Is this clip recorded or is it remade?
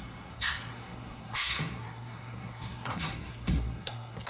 remade